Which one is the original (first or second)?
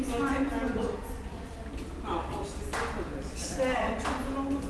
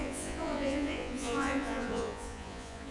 first